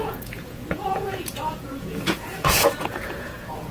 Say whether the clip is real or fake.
fake